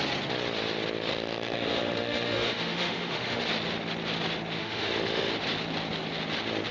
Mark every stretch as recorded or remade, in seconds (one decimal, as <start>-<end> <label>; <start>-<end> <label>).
0.0-1.1 recorded; 1.1-3.4 remade; 3.4-4.6 recorded; 4.6-5.3 remade; 5.3-6.7 recorded